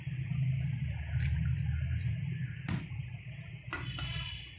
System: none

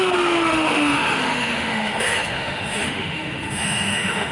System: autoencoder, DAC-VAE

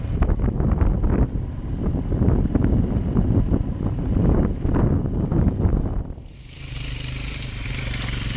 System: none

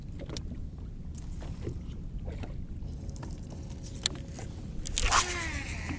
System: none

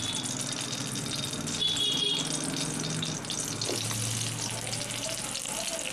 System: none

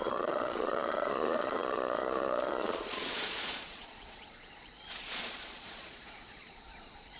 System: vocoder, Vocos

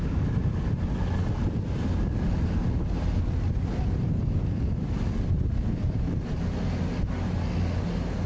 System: none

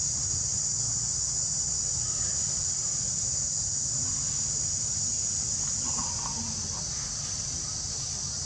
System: none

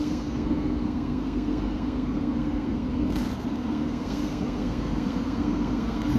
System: codec, SNAC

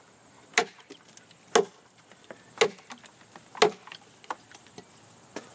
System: none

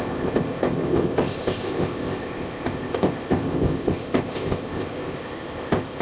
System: codec, ZipCodec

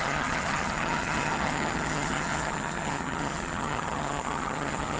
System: vocoder, HiFi-GAN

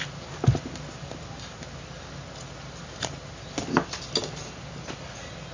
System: none